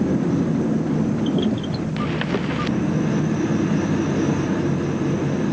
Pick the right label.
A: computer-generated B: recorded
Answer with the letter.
B